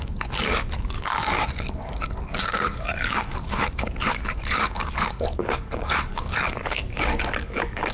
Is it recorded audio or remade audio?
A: remade